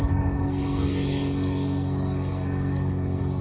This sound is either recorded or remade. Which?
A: remade